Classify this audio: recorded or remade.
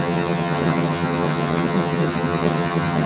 remade